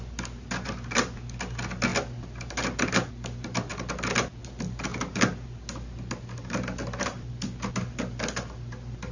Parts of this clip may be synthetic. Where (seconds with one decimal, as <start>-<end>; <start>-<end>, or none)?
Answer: none